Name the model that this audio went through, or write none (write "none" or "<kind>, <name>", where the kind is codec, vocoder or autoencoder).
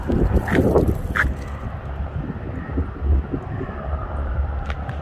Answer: none